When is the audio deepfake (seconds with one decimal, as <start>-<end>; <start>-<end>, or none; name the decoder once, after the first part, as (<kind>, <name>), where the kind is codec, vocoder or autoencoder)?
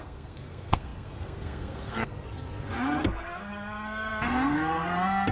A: 0.0-5.3 (codec, SNAC)